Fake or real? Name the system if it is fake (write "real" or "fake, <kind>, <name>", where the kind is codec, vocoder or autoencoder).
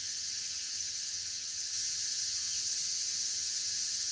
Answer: fake, vocoder, HiFi-GAN